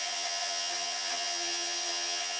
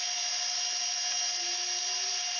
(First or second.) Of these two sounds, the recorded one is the second